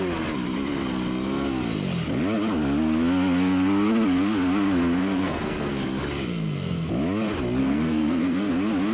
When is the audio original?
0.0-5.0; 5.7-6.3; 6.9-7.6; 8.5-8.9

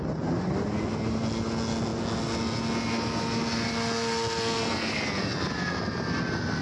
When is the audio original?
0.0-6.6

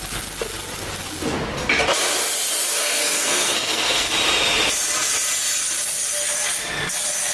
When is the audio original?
0.0-2.8; 4.1-7.3

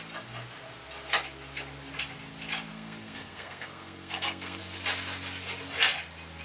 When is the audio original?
0.0-2.7; 4.6-6.4